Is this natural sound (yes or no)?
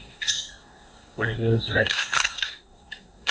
no